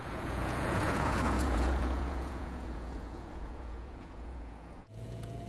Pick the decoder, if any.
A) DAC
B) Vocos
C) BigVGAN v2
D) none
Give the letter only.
B